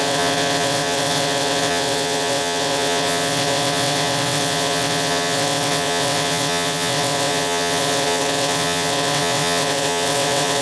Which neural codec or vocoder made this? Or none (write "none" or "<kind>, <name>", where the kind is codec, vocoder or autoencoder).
vocoder, WaveNeXt